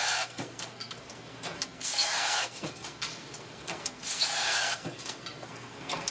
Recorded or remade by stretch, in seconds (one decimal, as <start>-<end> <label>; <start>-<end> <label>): 0.0-6.1 remade